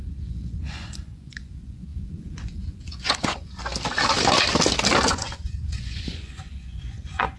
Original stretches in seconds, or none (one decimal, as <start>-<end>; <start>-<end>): 3.7-5.1